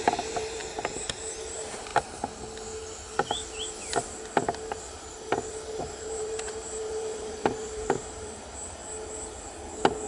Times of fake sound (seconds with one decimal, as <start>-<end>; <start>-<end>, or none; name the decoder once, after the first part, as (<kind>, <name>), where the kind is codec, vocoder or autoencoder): 0.0-0.6 (vocoder, BigVGAN v2); 1.5-1.9; 5.8-8.8